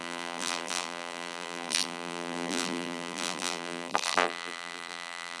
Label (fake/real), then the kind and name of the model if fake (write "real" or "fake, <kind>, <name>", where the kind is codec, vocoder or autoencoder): fake, vocoder, BigVGAN v2